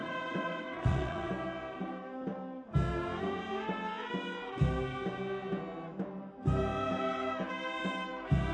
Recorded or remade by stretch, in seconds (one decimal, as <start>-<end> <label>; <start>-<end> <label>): 0.0-1.3 remade; 1.3-8.5 recorded